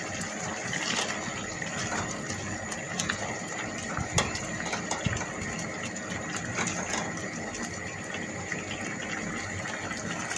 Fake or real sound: real